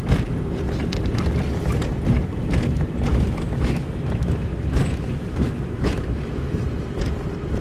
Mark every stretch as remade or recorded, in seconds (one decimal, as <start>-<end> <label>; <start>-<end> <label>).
0.0-3.1 recorded; 3.1-6.6 remade; 6.6-7.6 recorded